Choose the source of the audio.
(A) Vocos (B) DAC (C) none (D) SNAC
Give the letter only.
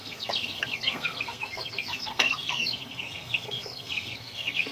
D